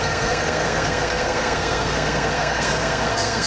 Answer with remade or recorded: remade